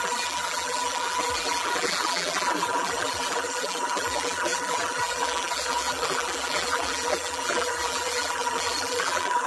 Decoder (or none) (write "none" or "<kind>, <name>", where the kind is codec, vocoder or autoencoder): vocoder, BigVGAN v2